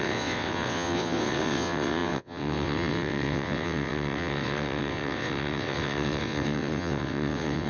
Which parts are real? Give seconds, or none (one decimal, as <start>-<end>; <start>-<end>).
none